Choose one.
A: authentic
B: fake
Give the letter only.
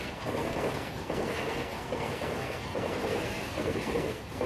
B